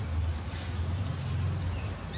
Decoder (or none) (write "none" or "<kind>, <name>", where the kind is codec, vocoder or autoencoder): none